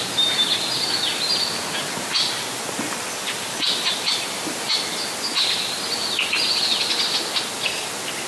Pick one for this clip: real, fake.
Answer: real